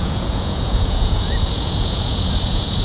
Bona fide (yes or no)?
no